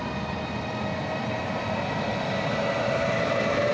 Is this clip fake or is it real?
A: real